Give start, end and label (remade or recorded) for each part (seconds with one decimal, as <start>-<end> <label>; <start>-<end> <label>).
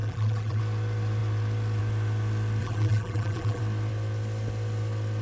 0.0-0.6 remade; 0.6-2.6 recorded; 2.6-3.6 remade; 3.6-5.2 recorded